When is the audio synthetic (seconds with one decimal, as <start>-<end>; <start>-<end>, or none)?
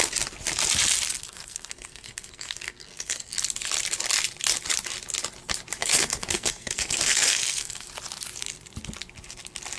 1.2-3.3; 5.8-7.9